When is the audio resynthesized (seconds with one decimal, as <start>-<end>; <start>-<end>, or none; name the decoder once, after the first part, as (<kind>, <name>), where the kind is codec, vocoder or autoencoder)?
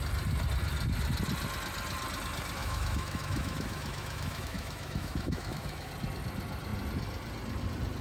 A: 2.6-5.9 (autoencoder, DAC-VAE)